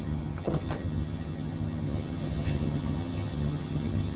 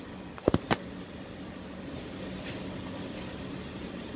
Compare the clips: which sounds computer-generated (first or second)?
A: first